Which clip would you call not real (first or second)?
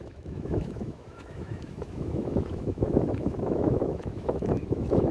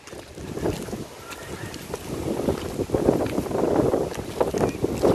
first